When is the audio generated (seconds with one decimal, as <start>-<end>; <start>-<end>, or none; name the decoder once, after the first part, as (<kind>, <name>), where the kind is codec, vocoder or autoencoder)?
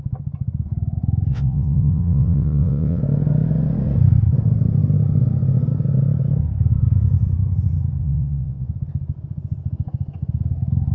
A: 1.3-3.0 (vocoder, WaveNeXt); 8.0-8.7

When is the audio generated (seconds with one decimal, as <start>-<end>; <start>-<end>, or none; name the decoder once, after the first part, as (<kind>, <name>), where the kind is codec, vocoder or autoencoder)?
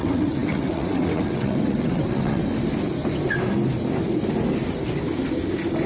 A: 0.0-2.4 (vocoder, WaveNeXt)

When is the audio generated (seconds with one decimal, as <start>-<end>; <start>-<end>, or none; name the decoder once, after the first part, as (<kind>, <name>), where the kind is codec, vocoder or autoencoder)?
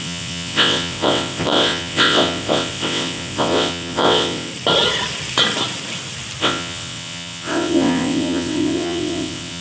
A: 0.0-4.5 (vocoder, WaveNeXt); 6.4-9.6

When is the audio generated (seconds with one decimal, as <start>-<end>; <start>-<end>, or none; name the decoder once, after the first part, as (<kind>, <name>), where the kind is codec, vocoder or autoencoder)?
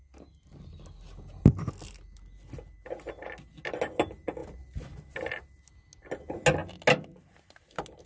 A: none